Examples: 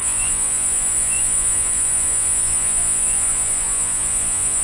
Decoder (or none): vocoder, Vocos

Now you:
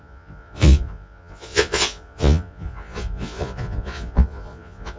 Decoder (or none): vocoder, Vocos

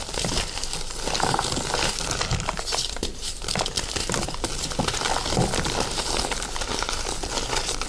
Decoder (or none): none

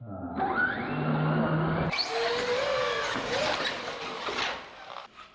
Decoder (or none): none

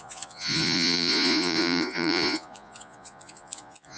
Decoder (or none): vocoder, Vocos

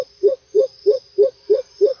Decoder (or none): vocoder, Vocos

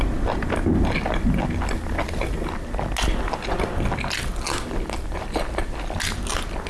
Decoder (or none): none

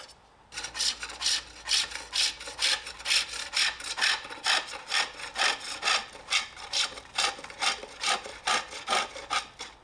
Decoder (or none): none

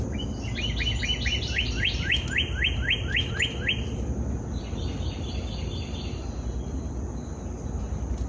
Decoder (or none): none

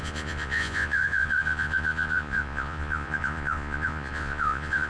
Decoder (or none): vocoder, Vocos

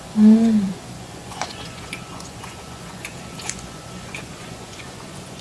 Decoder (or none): vocoder, Vocos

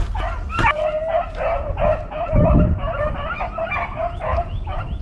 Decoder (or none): none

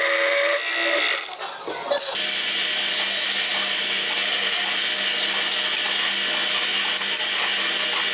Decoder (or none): none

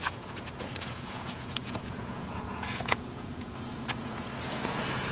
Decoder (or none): vocoder, Vocos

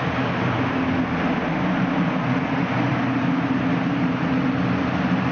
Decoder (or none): none